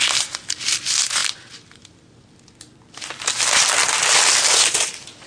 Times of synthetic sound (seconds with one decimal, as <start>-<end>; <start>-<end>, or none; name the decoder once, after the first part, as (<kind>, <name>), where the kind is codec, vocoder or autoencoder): none